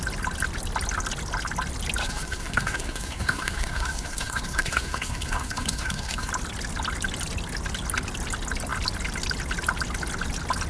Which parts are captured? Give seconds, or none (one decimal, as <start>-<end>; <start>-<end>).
0.0-2.0; 6.3-10.7